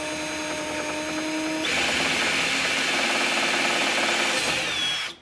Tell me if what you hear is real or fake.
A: real